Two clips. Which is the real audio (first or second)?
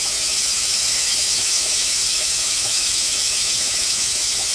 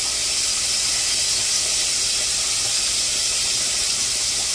second